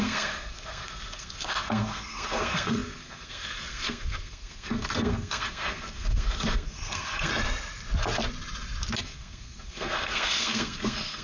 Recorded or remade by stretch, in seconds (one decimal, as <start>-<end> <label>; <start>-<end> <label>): 0.0-7.3 remade; 7.3-9.0 recorded; 9.0-11.2 remade